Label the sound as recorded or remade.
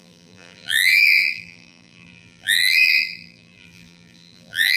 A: remade